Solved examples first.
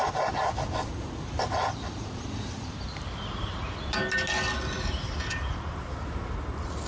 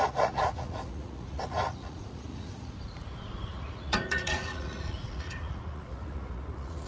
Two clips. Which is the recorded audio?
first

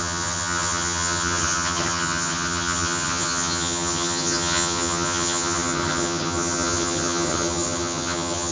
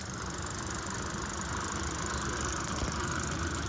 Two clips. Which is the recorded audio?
second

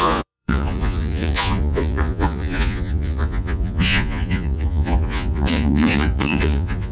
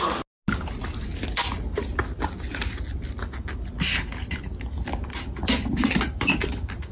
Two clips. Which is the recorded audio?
second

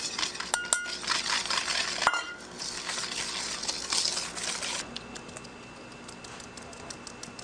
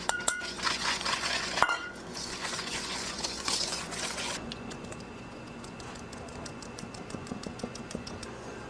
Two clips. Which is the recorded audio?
first